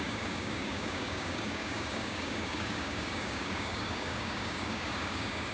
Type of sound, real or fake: fake